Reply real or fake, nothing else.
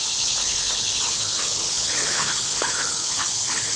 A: fake